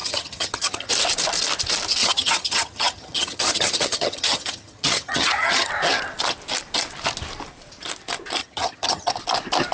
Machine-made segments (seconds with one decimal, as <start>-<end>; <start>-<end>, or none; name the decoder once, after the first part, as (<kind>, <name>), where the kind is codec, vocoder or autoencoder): 0.0-0.9 (vocoder, HiFi-GAN); 2.0-5.7; 8.4-9.1